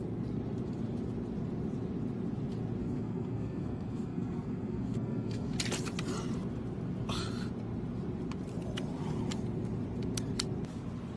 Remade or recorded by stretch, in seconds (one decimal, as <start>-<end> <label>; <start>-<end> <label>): 0.0-2.8 recorded; 2.8-5.5 remade; 5.5-11.2 recorded